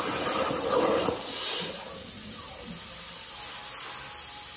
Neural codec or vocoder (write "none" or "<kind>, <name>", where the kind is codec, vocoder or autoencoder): none